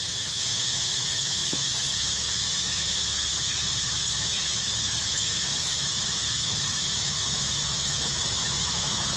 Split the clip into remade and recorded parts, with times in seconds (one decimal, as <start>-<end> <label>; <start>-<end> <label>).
0.0-9.2 remade